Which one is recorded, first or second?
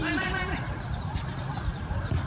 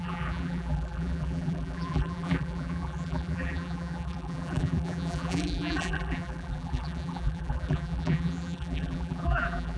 first